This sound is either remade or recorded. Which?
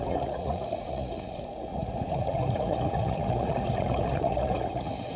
remade